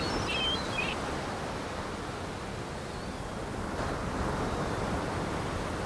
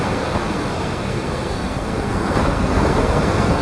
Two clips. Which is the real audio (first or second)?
first